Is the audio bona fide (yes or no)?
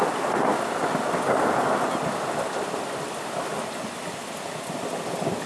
yes